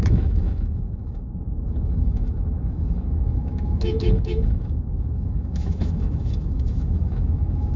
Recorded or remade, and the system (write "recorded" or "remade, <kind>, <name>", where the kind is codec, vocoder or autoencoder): remade, autoencoder, DAC-VAE